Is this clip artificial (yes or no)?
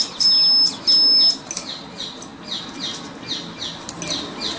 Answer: no